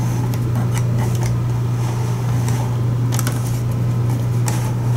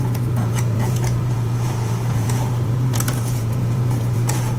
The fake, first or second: second